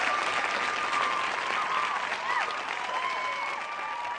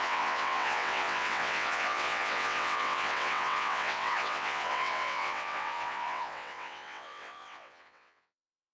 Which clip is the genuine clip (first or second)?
first